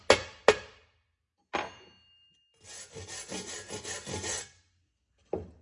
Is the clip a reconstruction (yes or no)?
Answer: no